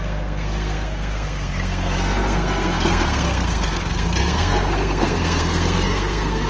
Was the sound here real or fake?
fake